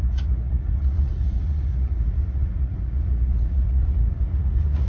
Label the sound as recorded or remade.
remade